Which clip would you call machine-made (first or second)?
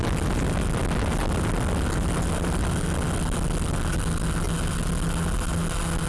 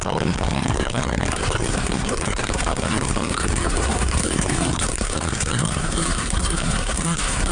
second